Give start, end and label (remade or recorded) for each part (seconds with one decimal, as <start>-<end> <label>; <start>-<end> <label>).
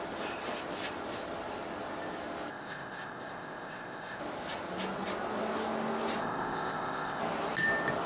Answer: 0.0-2.5 recorded; 2.5-4.2 remade; 4.2-6.2 recorded; 6.2-7.2 remade; 7.2-8.1 recorded